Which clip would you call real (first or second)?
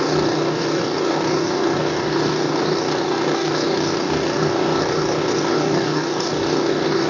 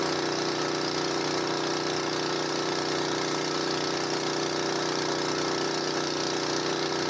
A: second